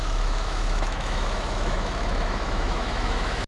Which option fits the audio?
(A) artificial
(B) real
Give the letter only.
A